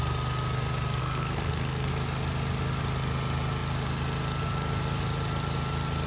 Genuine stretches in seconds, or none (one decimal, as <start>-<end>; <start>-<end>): 0.0-1.0; 1.9-6.1